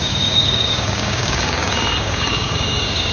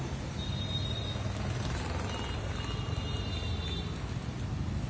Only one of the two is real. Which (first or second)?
second